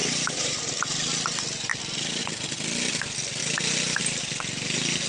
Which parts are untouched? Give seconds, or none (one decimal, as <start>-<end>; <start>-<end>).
0.6-1.7; 2.2-5.1